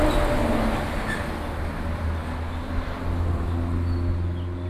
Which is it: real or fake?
real